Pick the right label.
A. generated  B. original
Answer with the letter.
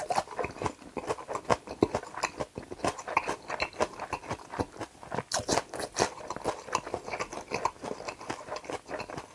B